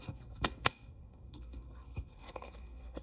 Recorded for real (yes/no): no